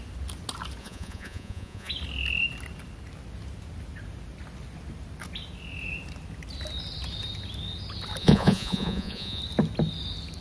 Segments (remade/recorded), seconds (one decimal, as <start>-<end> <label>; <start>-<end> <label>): 0.0-0.8 recorded; 0.8-1.9 remade; 1.9-8.2 recorded; 8.2-9.4 remade; 9.4-10.4 recorded